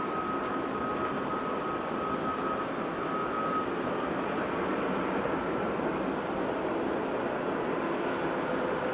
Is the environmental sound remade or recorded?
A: recorded